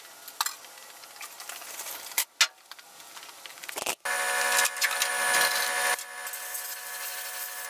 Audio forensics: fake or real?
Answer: real